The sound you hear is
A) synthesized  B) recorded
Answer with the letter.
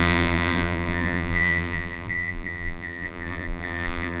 A